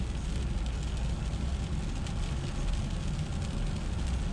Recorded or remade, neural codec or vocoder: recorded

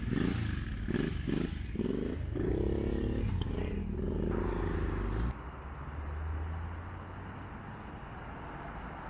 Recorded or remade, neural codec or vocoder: recorded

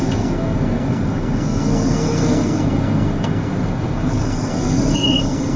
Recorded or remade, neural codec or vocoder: remade, codec, SNAC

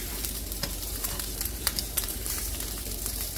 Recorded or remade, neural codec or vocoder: remade, vocoder, BigVGAN v2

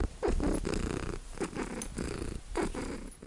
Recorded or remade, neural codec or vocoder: recorded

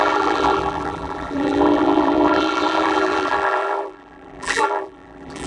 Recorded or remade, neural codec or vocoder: remade, vocoder, BigVGAN v2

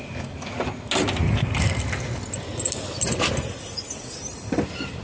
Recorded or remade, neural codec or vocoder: recorded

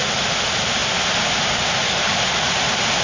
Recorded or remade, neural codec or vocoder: recorded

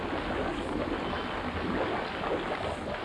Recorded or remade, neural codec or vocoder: recorded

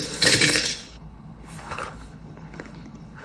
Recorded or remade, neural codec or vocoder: remade, codec, HILCodec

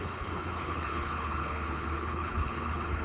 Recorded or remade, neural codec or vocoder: remade, codec, HILCodec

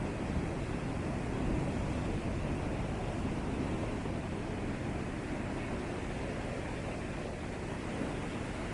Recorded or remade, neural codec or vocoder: recorded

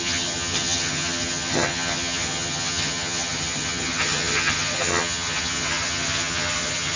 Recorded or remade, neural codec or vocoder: remade, vocoder, HiFi-GAN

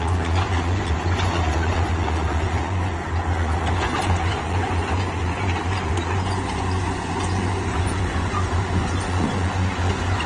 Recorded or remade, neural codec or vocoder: remade, vocoder, Vocos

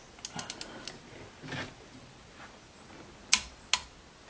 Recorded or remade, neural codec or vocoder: recorded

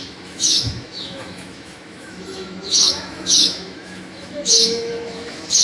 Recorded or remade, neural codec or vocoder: remade, autoencoder, DAC-VAE